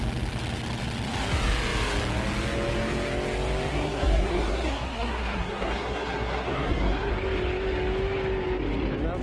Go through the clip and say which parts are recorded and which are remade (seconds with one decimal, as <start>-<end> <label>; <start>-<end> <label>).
0.0-3.7 recorded; 3.7-7.1 remade; 7.1-9.2 recorded